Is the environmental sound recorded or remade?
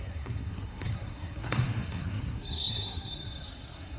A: remade